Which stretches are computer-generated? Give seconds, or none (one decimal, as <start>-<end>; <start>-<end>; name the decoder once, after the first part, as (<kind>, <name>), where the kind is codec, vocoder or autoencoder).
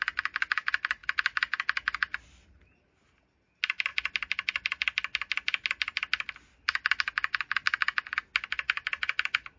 none